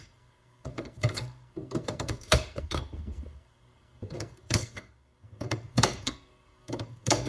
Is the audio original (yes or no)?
no